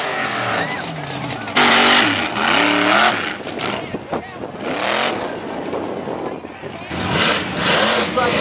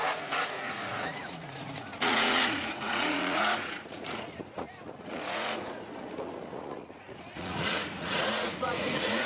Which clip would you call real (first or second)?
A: first